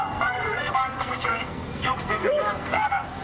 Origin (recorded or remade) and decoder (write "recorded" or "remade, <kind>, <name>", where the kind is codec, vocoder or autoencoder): remade, codec, SNAC